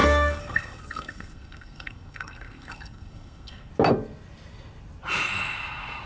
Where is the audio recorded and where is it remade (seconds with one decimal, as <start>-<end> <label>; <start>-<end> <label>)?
0.0-3.7 remade; 3.7-6.1 recorded